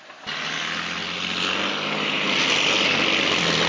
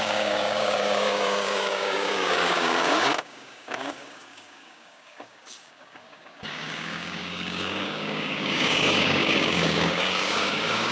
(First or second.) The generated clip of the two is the second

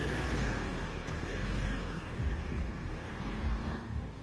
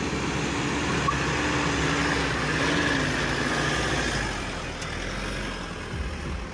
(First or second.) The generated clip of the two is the first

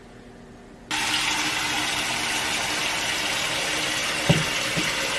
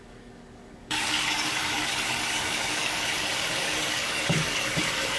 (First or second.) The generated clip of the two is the second